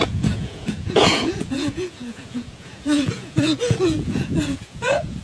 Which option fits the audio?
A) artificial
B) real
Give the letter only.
A